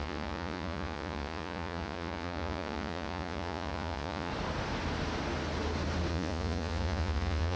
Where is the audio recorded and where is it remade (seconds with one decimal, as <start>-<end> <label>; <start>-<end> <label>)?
0.0-4.3 remade; 4.3-6.1 recorded; 6.1-7.6 remade